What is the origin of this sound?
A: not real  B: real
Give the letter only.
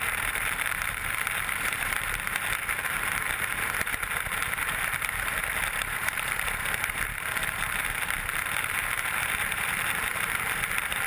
A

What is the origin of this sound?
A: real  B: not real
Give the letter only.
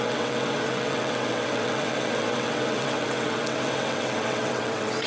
B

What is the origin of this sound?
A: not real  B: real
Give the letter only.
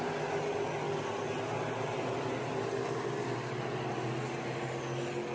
B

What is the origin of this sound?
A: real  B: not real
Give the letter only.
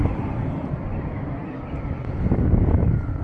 A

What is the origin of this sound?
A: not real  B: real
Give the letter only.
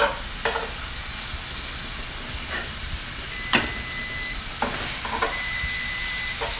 B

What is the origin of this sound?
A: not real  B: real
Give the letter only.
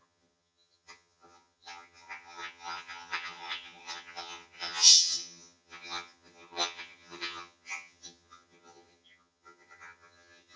A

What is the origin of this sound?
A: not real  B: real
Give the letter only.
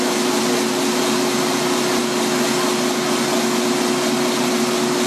B